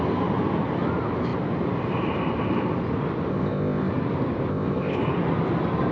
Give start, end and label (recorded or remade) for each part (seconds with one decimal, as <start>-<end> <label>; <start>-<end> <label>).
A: 0.0-3.3 recorded; 3.3-3.9 remade; 3.9-4.5 recorded; 4.5-5.0 remade; 5.0-5.9 recorded